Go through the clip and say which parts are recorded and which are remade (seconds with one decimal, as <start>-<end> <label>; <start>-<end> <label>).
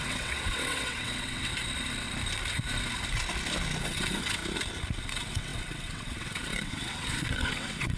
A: 0.0-1.5 remade; 1.5-3.8 recorded; 3.8-4.4 remade; 4.4-5.1 recorded; 5.1-8.0 remade